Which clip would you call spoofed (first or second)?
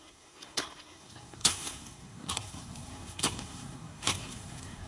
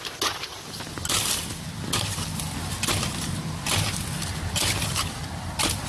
first